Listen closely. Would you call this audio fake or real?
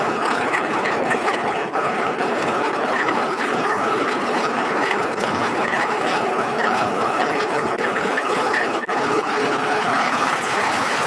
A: fake